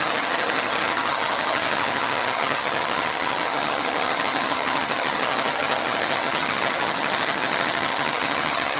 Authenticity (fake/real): fake